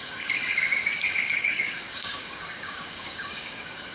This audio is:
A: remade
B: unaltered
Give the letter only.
A